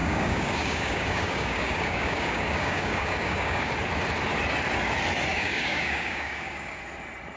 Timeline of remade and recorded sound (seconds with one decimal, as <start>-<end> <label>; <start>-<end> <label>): 0.0-3.7 remade; 3.7-5.3 recorded; 5.3-6.8 remade; 6.8-7.4 recorded